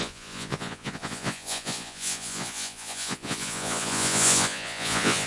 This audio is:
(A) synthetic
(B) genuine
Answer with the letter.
A